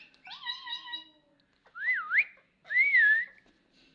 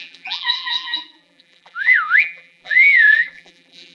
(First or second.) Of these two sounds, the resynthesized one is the second